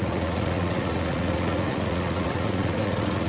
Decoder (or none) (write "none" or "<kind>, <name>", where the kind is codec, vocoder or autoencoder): vocoder, Vocos